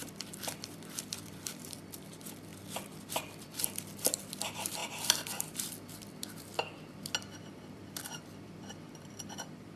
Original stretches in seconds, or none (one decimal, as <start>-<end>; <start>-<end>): 2.5-3.1; 6.5-7.3